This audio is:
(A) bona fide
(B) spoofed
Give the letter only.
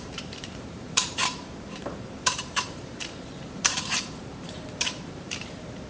B